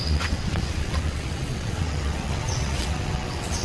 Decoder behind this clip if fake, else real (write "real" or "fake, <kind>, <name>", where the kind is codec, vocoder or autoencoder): fake, vocoder, WaveNeXt